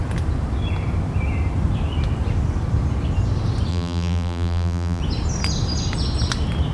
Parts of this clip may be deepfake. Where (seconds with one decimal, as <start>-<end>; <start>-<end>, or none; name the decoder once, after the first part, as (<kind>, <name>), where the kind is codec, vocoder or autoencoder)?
3.7-5.0 (vocoder, BigVGAN v2)